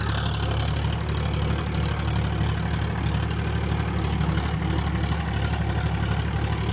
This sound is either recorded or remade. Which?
recorded